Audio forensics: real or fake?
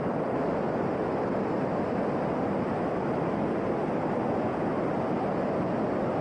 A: real